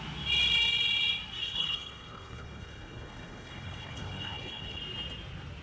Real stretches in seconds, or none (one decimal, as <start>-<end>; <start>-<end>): 0.0-1.4; 4.8-5.6